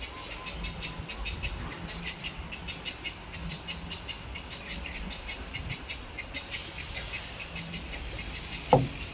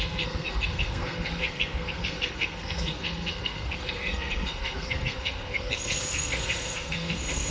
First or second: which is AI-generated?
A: second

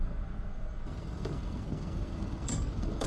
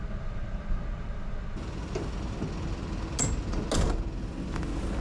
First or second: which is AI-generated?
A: first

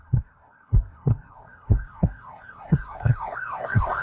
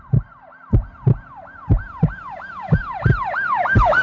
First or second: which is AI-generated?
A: first